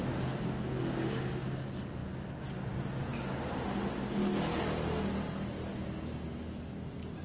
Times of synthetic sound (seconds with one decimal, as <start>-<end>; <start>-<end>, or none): none